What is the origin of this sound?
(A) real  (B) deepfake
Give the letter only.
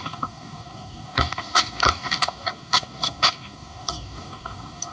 B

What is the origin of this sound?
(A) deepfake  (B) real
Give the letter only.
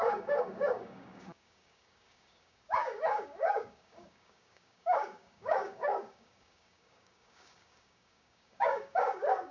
A